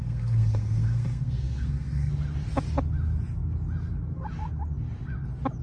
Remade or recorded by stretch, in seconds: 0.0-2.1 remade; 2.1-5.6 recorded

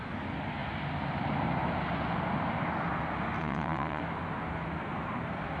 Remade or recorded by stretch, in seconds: 0.0-3.4 recorded; 3.4-4.0 remade; 4.0-5.6 recorded

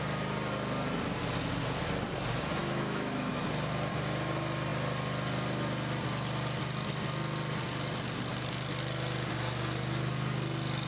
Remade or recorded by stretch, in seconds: 0.0-2.6 recorded; 2.6-3.4 remade; 3.4-10.9 recorded

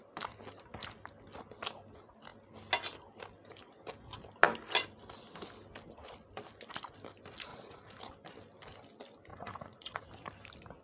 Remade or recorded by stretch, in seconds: 0.0-7.5 recorded; 7.5-8.0 remade; 8.0-9.3 recorded; 9.3-10.0 remade; 10.0-10.8 recorded

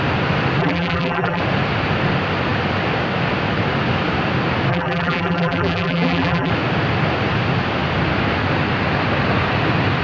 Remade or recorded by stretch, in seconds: 0.0-0.6 recorded; 0.6-1.4 remade; 1.4-4.7 recorded; 4.7-6.5 remade; 6.5-10.0 recorded

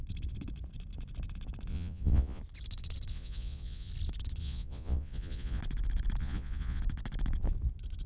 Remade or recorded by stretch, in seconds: 0.0-1.7 recorded; 1.7-2.4 remade; 2.4-3.1 recorded; 3.1-3.9 remade; 3.9-4.4 recorded; 4.4-5.6 remade; 5.6-6.2 recorded; 6.2-6.8 remade; 6.8-8.1 recorded

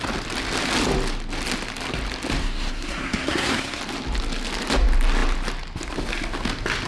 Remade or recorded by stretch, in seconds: 0.0-2.4 recorded; 2.4-3.8 remade; 3.8-6.9 recorded

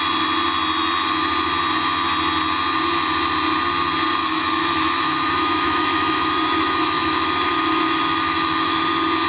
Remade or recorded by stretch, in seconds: 0.0-4.2 recorded; 4.2-8.8 remade; 8.8-9.3 recorded